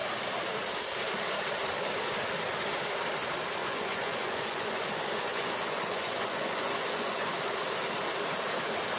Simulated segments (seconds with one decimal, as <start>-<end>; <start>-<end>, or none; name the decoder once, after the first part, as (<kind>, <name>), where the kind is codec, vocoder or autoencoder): 3.6-7.3 (vocoder, Vocos)